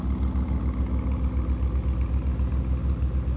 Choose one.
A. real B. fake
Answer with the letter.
A